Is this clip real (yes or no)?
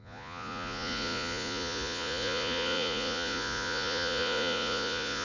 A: no